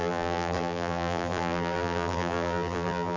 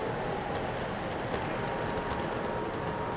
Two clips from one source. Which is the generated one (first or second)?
first